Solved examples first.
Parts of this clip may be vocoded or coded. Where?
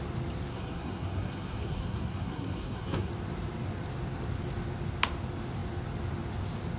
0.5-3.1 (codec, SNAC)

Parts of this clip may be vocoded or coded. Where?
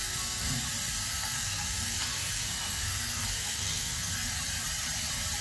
0.0-0.6 (codec, SNAC); 1.1-4.1